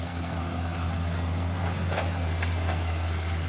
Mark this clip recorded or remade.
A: remade